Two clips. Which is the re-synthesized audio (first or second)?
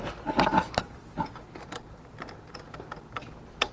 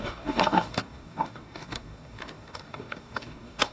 second